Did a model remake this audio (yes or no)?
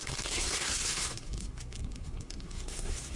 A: yes